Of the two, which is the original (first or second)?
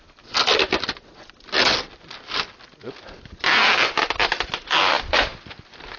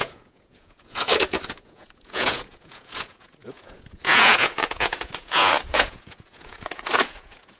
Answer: first